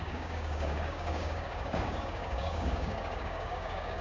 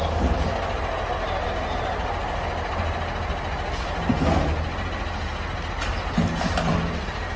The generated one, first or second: first